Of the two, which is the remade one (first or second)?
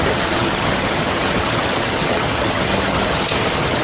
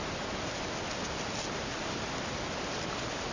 first